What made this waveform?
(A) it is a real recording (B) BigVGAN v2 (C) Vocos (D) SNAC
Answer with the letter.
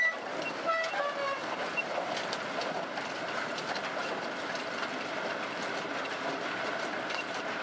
A